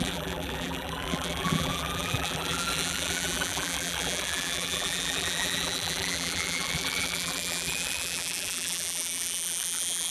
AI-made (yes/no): yes